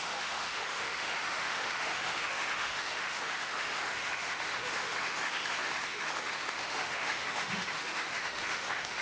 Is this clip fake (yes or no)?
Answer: yes